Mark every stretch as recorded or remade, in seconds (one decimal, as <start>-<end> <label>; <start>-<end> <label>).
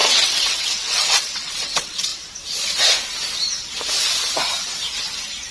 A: 0.0-2.1 remade; 2.1-5.5 recorded